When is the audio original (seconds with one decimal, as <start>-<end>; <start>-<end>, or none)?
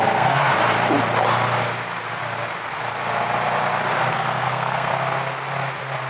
0.5-4.1; 4.9-6.1